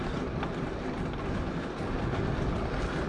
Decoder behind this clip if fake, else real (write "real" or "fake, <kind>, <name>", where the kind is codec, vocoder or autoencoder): real